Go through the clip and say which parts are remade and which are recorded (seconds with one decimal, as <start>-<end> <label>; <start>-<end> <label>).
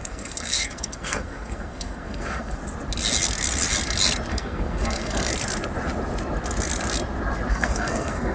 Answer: 0.0-2.6 remade; 2.6-4.3 recorded; 4.3-5.3 remade; 5.3-7.5 recorded; 7.5-8.3 remade